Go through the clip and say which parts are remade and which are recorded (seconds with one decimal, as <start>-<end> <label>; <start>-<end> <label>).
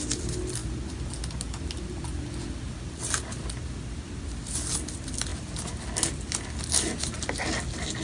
0.0-8.0 recorded